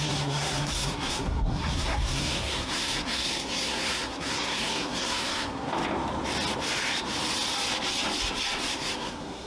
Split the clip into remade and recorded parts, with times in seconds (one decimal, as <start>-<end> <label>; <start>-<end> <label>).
0.0-5.7 remade; 5.7-8.7 recorded; 8.7-9.5 remade